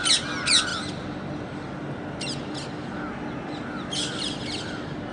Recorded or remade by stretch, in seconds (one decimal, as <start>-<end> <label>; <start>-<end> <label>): 0.0-5.1 recorded